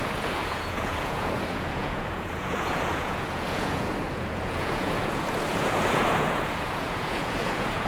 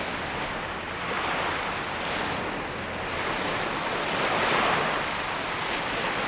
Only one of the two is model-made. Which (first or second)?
first